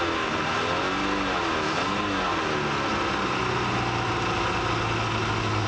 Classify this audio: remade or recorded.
recorded